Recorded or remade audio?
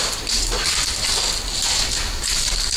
recorded